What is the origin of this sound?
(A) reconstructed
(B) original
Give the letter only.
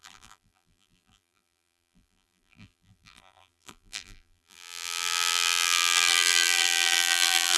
A